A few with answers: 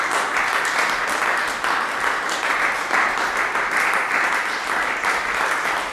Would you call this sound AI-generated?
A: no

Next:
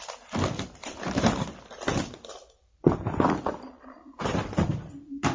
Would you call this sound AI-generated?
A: yes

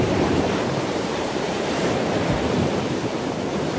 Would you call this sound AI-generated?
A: yes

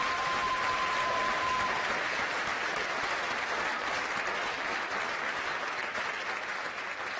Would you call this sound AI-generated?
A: yes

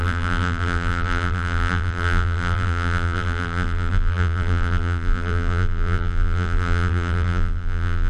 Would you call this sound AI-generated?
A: yes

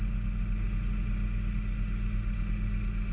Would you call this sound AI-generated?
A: no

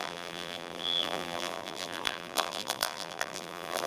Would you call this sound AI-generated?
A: yes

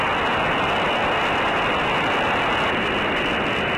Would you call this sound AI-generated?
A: no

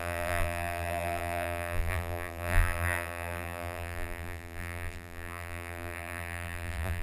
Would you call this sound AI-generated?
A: yes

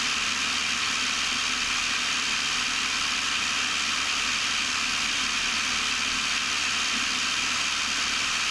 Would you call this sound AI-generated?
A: no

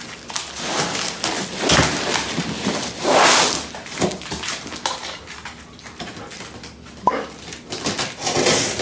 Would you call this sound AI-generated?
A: no